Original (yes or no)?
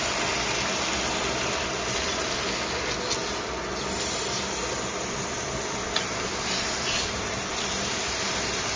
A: yes